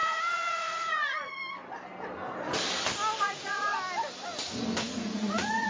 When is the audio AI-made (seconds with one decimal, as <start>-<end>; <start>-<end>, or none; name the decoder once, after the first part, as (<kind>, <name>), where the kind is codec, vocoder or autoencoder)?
0.0-1.4 (vocoder, Vocos); 3.2-3.7; 4.9-5.7